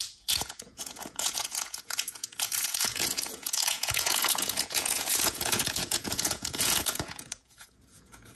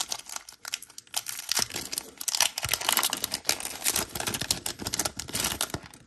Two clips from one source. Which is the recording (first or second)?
second